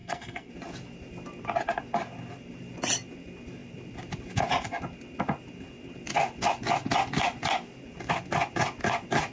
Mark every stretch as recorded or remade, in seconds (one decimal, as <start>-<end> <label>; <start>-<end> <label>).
0.0-0.5 remade; 0.5-9.3 recorded